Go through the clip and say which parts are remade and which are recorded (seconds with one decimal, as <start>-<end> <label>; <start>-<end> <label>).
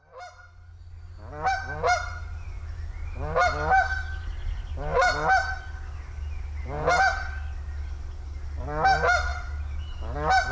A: 0.0-10.5 recorded